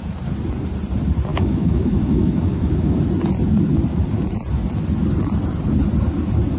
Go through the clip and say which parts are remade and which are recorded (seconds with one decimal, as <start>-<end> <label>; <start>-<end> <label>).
0.0-1.3 recorded; 1.3-3.0 remade; 3.0-6.6 recorded